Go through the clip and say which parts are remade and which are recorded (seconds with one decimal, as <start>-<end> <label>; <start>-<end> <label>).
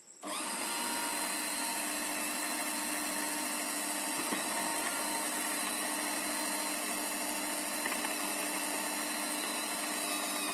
0.0-10.5 recorded